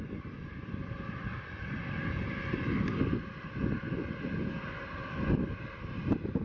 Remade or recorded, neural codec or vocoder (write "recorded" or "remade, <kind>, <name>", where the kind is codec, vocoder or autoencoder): recorded